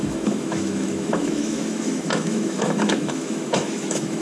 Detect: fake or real fake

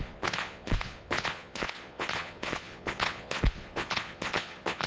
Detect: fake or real fake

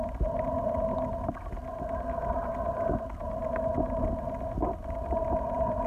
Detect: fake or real fake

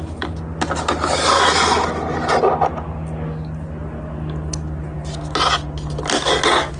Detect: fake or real real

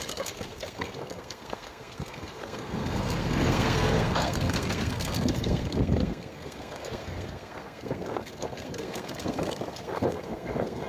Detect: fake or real fake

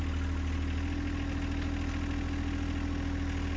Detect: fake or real real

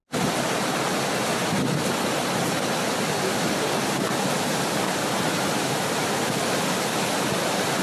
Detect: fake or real real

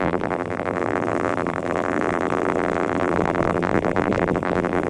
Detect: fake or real fake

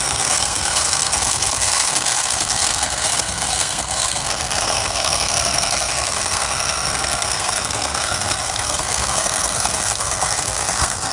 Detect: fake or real fake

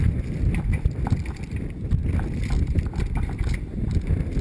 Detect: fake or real fake